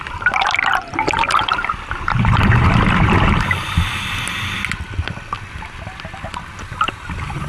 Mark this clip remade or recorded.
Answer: recorded